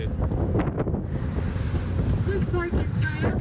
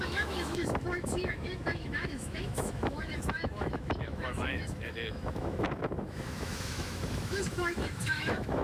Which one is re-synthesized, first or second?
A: second